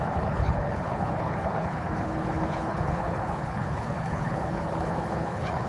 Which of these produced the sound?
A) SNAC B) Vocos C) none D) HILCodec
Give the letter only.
D